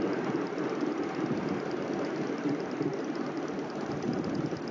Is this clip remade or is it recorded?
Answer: recorded